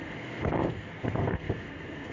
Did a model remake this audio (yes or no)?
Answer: yes